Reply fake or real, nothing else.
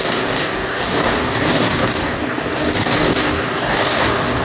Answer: fake